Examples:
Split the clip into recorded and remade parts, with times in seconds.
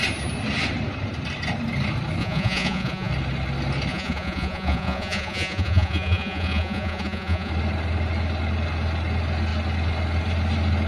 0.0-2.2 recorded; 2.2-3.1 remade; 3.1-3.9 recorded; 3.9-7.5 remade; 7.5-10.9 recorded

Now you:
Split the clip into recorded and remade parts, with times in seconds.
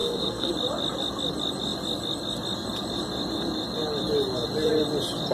0.0-0.5 remade; 0.5-5.3 recorded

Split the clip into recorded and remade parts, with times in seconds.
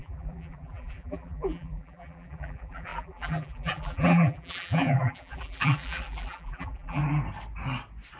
0.0-7.0 remade; 7.0-8.2 recorded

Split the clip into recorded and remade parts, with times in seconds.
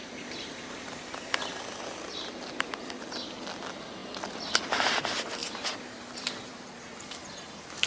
0.0-0.6 remade; 0.6-5.4 recorded; 5.4-6.9 remade; 6.9-7.9 recorded